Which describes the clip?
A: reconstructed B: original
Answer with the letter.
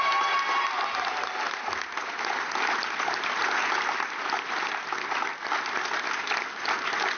B